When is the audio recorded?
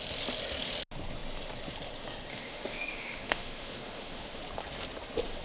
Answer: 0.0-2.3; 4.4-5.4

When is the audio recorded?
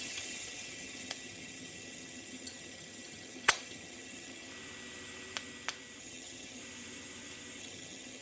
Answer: 4.5-6.0; 6.6-7.6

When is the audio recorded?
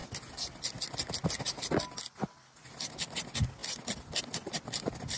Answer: 0.0-5.2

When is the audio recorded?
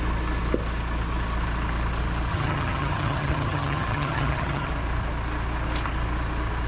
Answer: 0.0-2.3; 4.7-6.7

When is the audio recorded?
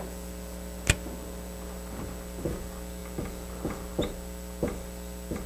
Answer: 0.0-5.5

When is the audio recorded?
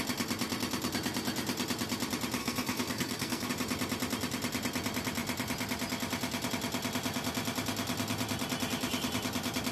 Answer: 0.0-2.4; 3.5-9.7